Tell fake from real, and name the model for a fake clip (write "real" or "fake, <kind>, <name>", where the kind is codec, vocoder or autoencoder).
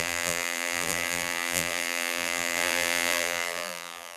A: fake, vocoder, BigVGAN v2